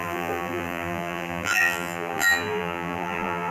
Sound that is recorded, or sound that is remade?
remade